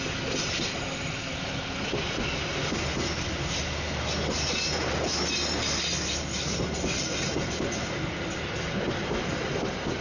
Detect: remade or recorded recorded